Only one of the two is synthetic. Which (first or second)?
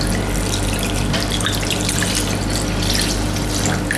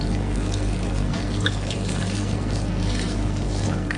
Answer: second